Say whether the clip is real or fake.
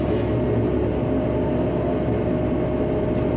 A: real